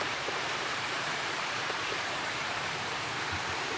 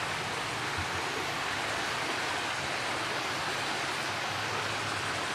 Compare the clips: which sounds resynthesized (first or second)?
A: first